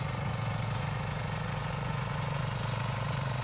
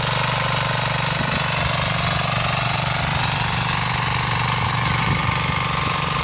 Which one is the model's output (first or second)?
first